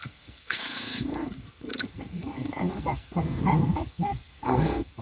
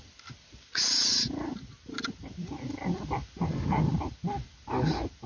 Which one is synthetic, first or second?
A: first